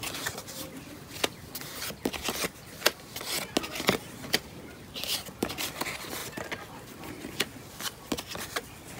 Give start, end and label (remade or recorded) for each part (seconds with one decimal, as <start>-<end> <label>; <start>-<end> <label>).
0.0-9.0 recorded